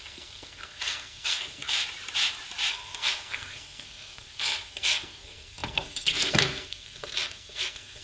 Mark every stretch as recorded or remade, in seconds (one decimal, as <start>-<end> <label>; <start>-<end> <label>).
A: 0.0-1.8 remade; 1.8-2.7 recorded; 2.7-8.0 remade